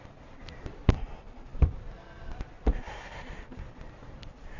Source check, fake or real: fake